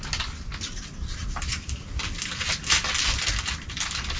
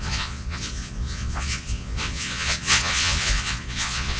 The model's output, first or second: second